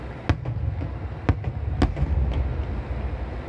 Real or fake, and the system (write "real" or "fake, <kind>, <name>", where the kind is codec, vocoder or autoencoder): real